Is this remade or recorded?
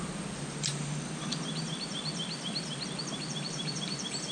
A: recorded